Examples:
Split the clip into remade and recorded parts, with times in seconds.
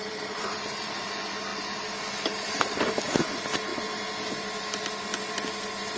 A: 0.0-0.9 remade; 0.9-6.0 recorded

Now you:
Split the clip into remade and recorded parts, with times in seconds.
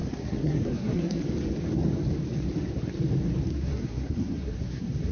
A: 0.0-1.2 remade; 1.2-3.5 recorded; 3.5-5.1 remade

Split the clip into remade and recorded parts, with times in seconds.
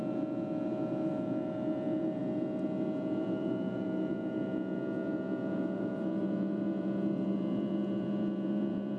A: 0.0-9.0 remade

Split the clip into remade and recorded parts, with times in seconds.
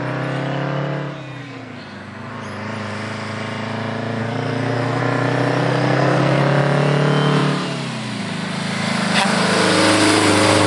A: 0.0-1.4 recorded; 1.4-2.3 remade; 2.3-4.2 recorded; 4.2-5.0 remade; 5.0-5.6 recorded; 5.6-6.4 remade; 6.4-10.7 recorded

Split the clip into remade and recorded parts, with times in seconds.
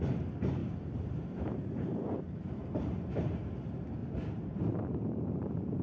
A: 0.0-0.6 recorded; 0.6-3.4 remade; 3.4-4.0 recorded; 4.0-5.3 remade; 5.3-5.8 recorded